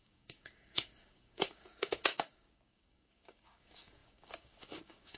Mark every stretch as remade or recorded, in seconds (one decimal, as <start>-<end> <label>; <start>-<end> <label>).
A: 0.0-5.2 remade